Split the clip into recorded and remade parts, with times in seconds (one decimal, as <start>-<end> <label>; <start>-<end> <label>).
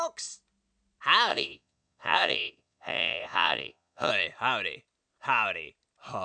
0.0-1.3 recorded; 1.3-4.1 remade; 4.1-6.2 recorded